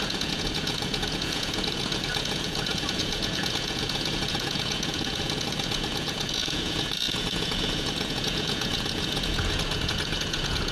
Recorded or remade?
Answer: remade